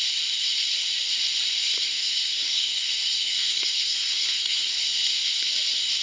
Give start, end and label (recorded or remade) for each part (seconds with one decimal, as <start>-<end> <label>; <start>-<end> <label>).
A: 0.0-1.6 recorded; 1.6-5.2 remade; 5.2-6.0 recorded